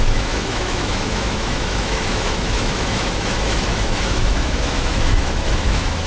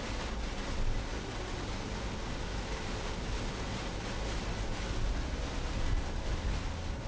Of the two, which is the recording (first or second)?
second